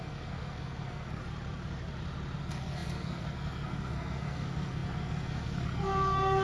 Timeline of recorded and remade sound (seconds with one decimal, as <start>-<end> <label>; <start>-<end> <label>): 0.0-1.2 remade; 1.2-2.4 recorded; 2.4-6.4 remade